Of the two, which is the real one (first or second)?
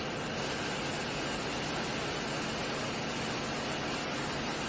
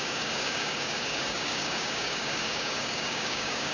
first